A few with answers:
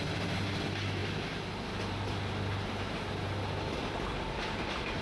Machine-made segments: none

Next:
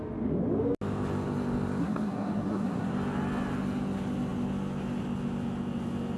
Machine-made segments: 1.8-2.9 (codec, SNAC)

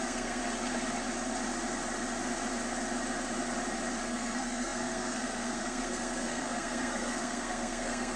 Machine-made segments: 0.0-0.4 (codec, SNAC); 4.0-8.2

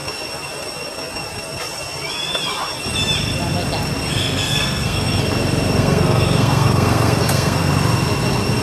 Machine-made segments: 4.0-5.2 (codec, SNAC); 5.8-7.7

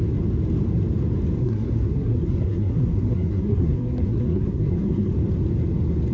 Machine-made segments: 1.4-5.1 (codec, SNAC)

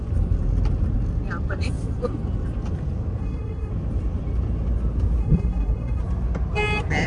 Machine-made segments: 3.2-3.7 (codec, SNAC); 5.2-6.0